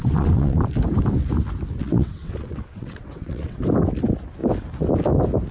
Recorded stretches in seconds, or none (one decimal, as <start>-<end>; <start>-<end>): 0.6-1.8; 3.6-5.5